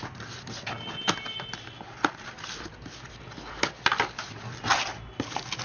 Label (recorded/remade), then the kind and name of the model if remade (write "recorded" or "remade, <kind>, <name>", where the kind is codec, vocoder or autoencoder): recorded